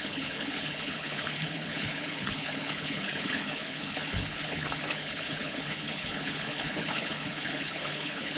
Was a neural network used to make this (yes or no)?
yes